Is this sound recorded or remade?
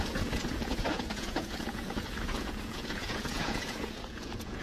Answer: remade